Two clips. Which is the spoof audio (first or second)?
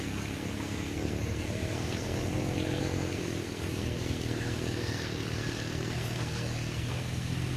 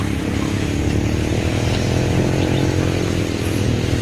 first